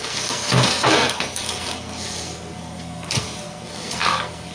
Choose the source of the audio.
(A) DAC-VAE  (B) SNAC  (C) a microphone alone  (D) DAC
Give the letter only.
B